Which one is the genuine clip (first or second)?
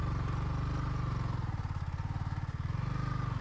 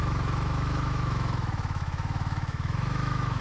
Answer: first